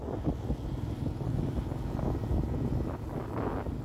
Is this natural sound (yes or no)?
yes